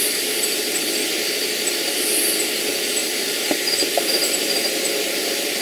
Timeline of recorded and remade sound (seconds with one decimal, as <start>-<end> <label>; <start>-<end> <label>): 0.0-3.0 recorded; 3.0-4.7 remade; 4.7-5.6 recorded

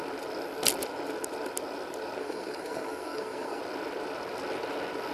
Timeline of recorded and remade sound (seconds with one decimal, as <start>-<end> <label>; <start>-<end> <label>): 0.0-2.2 recorded; 2.2-3.6 remade; 3.6-5.1 recorded

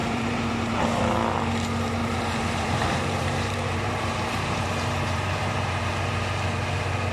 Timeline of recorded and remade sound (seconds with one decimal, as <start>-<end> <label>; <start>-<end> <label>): 0.0-0.8 remade; 0.8-2.0 recorded; 2.0-5.8 remade; 5.8-7.1 recorded

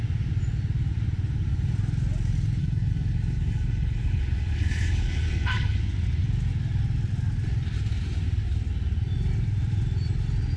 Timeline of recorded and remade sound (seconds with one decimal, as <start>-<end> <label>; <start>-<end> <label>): 0.0-2.6 recorded; 2.6-5.8 remade; 5.8-10.6 recorded

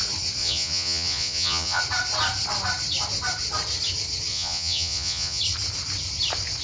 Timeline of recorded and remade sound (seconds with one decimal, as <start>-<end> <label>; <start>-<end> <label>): 0.0-0.4 recorded; 0.4-1.8 remade; 1.8-4.3 recorded; 4.3-5.4 remade; 5.4-6.6 recorded

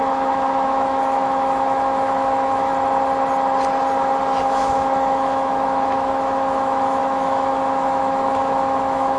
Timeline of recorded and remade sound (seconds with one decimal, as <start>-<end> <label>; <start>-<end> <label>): 0.0-2.7 remade; 2.7-4.4 recorded; 4.4-9.2 remade

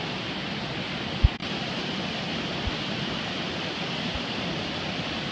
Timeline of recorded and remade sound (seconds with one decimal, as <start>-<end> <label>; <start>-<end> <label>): 0.0-1.4 recorded; 1.4-4.6 remade; 4.6-5.3 recorded

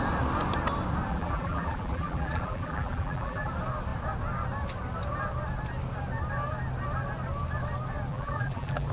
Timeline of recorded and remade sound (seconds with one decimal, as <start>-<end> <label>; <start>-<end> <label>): 0.0-1.1 recorded; 1.1-3.5 remade; 3.5-8.1 recorded; 8.1-8.9 remade